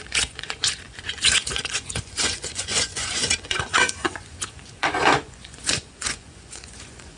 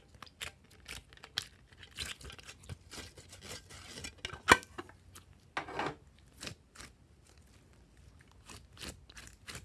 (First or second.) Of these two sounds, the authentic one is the second